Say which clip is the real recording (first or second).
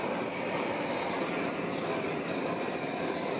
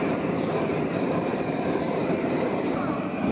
first